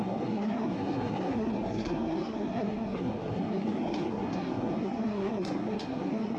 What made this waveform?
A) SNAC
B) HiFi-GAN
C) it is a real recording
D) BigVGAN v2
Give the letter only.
A